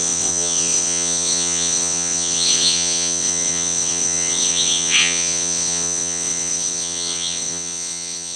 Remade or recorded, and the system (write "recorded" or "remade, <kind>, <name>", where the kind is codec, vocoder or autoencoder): remade, vocoder, WaveNeXt